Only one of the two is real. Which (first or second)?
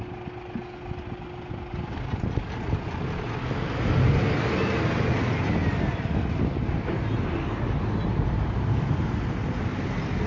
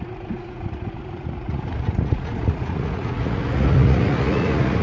first